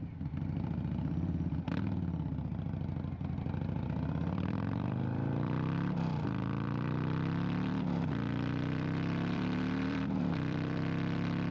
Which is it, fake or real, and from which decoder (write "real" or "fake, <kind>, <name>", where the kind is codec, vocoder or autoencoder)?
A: fake, vocoder, BigVGAN v2